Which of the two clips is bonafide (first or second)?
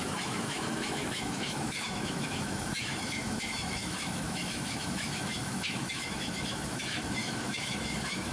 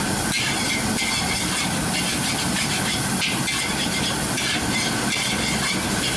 second